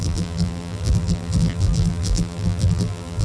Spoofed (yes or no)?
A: yes